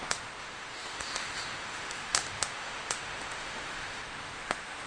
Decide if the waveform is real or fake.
fake